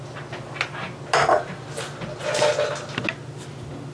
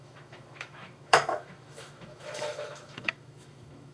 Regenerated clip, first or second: second